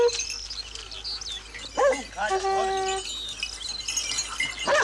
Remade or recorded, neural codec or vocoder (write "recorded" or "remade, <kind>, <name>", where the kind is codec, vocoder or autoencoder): recorded